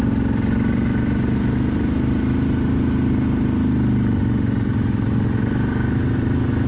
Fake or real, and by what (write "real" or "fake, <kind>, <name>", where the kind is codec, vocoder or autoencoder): real